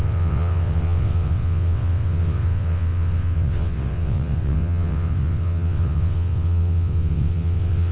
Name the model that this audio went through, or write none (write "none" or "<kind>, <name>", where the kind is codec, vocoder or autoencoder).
vocoder, WaveNeXt